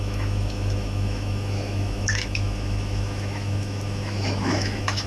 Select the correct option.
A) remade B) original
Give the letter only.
A